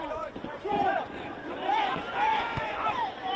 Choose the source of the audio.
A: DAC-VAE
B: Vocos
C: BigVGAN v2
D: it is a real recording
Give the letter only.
B